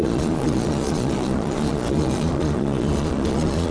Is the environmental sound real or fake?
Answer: fake